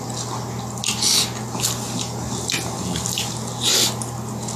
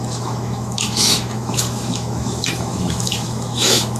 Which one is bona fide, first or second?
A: first